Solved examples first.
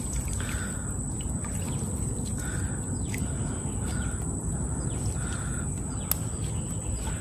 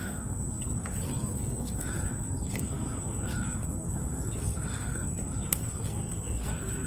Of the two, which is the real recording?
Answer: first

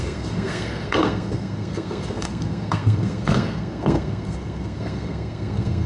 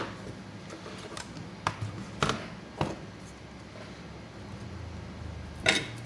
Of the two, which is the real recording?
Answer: second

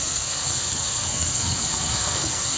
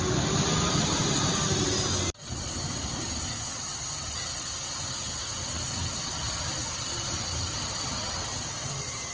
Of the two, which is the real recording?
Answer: second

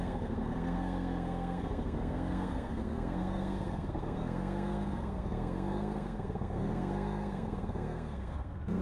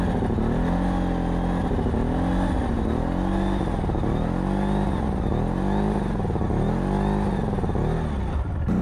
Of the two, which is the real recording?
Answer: second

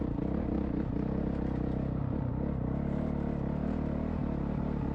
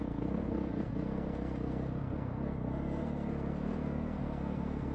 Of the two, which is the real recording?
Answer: first